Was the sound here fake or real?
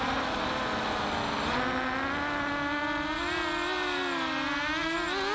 real